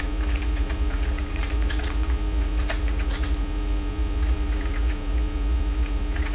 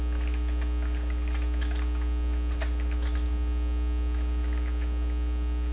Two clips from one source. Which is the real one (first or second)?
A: second